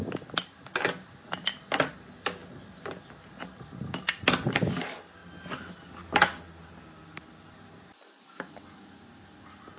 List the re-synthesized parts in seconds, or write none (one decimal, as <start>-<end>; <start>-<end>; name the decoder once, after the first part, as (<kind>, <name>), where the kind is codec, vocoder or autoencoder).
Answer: none